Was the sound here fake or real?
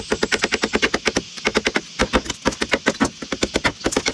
real